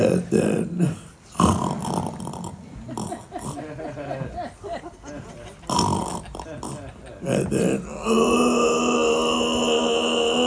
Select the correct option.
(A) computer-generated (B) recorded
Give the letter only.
B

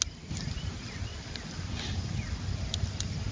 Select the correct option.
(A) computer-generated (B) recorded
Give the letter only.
B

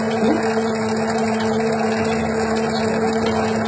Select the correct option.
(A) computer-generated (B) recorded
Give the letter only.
B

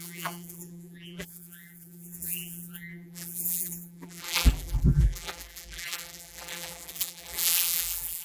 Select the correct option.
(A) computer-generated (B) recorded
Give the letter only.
A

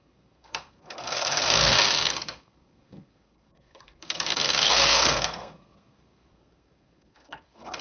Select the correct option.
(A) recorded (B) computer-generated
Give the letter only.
B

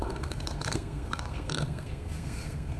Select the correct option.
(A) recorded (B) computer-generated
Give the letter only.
B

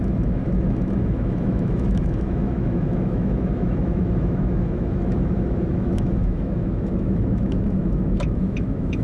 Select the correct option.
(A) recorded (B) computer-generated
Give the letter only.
B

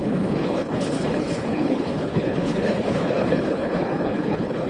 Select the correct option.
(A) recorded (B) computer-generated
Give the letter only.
B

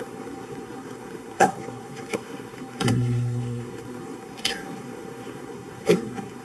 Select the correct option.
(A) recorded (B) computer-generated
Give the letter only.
B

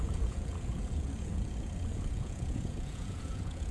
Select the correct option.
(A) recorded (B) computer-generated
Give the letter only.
B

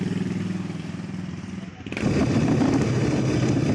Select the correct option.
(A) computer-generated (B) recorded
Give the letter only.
B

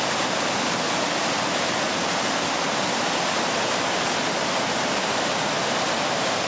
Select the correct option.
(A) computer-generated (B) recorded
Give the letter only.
B